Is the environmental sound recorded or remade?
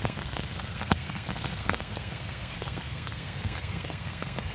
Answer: remade